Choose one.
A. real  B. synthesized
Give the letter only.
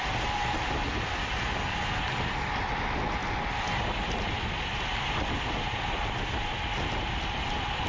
A